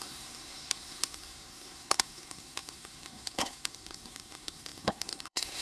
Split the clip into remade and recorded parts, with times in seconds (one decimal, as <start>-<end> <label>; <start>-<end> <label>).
0.0-5.6 remade